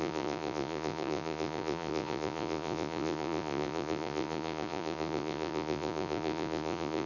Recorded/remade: remade